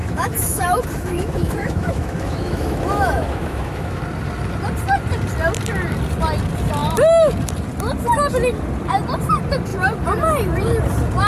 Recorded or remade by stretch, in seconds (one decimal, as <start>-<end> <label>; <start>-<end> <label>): 0.0-4.0 remade; 4.0-11.3 recorded